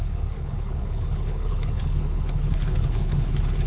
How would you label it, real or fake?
fake